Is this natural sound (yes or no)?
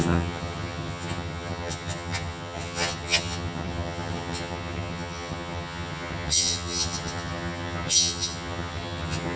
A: no